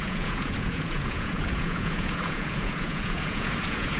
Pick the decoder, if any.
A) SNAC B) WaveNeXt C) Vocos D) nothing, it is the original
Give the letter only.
C